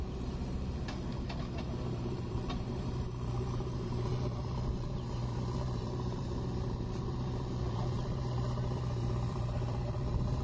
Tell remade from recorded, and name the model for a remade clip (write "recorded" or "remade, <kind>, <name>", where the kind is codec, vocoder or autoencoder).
remade, vocoder, BigVGAN v2